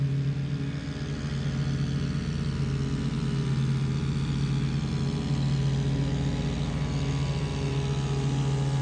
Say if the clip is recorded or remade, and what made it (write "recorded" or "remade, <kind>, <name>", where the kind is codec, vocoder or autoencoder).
recorded